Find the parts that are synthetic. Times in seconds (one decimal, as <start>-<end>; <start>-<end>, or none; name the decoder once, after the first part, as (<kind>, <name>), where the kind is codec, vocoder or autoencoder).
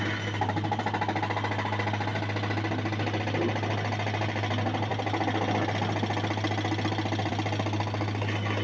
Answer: none